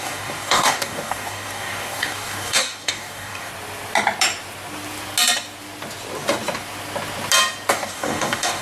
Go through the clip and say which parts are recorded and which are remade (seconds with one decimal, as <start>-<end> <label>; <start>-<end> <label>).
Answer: 0.0-3.5 remade; 3.5-7.7 recorded; 7.7-8.6 remade